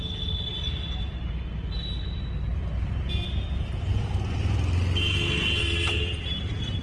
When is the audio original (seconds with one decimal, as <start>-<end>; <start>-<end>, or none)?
0.0-6.8